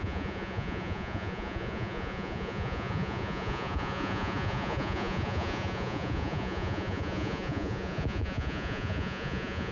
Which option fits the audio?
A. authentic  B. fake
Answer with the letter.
B